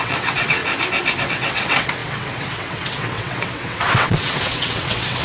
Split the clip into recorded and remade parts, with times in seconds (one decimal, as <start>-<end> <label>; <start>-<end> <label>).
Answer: 0.0-0.6 remade; 0.6-1.2 recorded; 1.2-5.2 remade